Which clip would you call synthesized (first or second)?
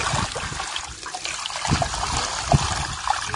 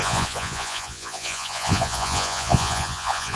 second